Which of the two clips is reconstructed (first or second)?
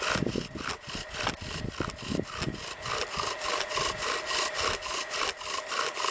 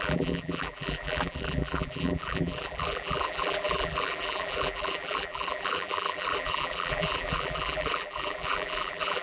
second